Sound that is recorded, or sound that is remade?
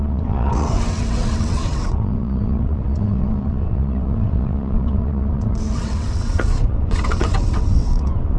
remade